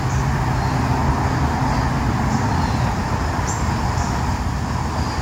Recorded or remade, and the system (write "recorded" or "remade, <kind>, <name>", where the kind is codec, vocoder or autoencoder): recorded